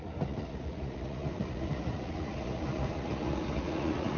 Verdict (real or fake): fake